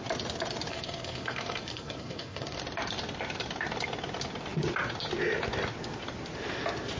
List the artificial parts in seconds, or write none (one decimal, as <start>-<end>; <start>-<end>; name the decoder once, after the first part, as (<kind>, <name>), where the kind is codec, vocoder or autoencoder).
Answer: 0.7-2.6 (codec, SNAC)